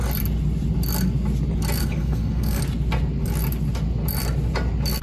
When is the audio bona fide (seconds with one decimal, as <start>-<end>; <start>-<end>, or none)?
0.0-1.8; 2.6-5.0